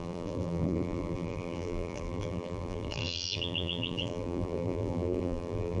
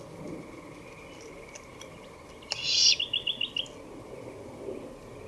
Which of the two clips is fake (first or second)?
first